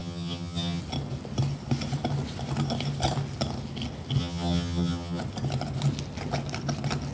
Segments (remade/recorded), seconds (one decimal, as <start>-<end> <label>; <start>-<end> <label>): 0.0-0.8 remade; 0.8-4.2 recorded; 4.2-5.2 remade; 5.2-7.1 recorded